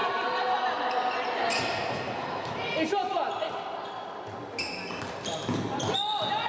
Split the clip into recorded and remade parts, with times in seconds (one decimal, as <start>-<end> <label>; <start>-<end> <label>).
0.0-6.5 recorded